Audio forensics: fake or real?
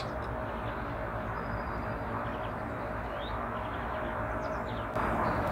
real